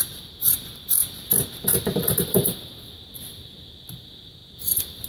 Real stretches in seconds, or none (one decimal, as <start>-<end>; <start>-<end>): 0.0-5.1